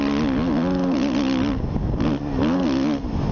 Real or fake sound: real